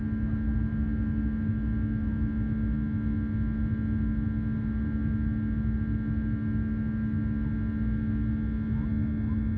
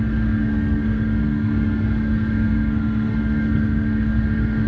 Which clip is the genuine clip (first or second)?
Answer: first